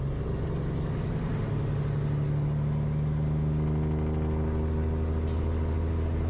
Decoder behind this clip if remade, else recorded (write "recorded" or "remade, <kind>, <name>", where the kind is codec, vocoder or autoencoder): recorded